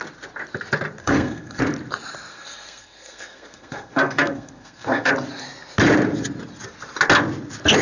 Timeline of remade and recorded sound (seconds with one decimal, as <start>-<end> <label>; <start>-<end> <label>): 0.0-1.0 recorded; 1.0-1.6 remade; 1.6-2.3 recorded; 2.3-5.1 remade; 5.1-7.8 recorded